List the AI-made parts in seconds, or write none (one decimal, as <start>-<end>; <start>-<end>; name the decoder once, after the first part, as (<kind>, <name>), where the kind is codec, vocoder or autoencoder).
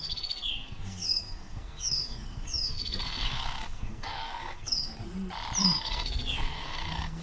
0.0-5.0 (codec, SNAC); 5.6-7.2